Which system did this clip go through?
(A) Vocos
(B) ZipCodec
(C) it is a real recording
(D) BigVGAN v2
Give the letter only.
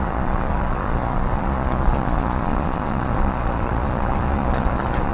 A